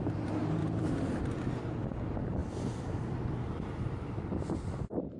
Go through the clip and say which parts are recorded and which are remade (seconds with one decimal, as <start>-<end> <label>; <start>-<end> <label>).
0.0-0.6 recorded; 0.6-1.2 remade; 1.2-2.4 recorded; 2.4-5.2 remade